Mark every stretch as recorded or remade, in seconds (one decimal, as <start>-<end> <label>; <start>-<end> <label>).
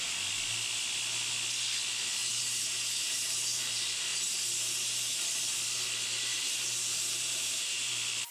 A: 0.0-2.2 recorded; 2.2-3.6 remade; 3.6-4.1 recorded; 4.1-5.2 remade; 5.2-6.3 recorded; 6.3-7.9 remade; 7.9-8.3 recorded